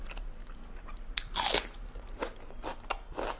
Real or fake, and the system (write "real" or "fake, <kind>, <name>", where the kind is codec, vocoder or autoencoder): real